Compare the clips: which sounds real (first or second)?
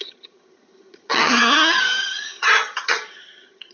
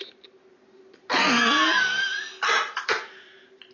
second